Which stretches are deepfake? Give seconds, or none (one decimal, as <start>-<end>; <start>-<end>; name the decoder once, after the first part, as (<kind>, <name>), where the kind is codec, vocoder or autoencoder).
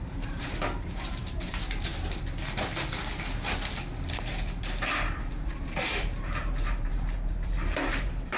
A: 0.0-1.9 (vocoder, BigVGAN v2); 4.6-8.4